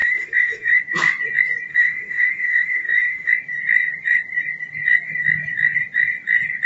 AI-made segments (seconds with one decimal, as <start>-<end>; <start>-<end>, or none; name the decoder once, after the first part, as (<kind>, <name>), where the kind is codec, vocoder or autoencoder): 0.0-0.8 (autoencoder, DAC-VAE); 1.7-3.3